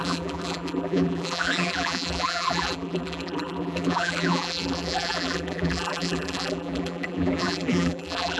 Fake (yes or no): yes